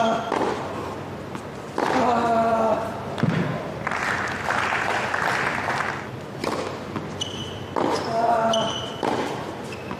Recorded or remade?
recorded